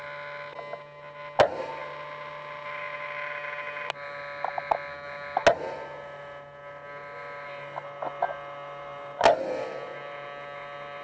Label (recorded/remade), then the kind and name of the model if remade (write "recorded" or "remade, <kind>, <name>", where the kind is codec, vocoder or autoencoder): recorded